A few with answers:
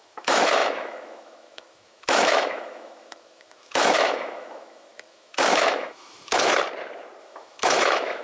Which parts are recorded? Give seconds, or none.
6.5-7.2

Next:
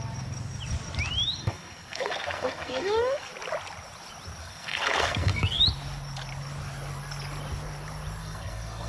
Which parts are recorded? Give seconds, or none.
0.0-1.4; 3.3-4.4; 5.6-8.2

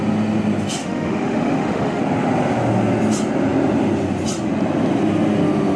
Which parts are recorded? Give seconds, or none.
0.0-0.8; 2.0-5.8

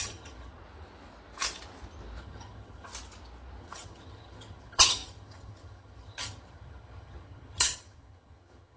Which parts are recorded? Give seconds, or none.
0.5-2.2; 2.9-3.6